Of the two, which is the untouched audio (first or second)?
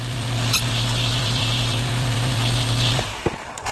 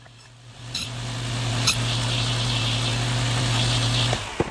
second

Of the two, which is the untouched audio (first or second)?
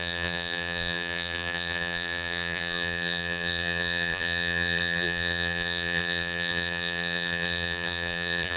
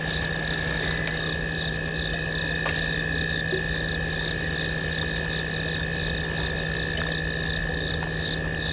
second